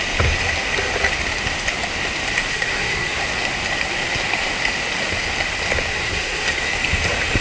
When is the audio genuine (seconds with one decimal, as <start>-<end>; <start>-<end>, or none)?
0.0-2.5; 3.2-5.9; 6.6-7.4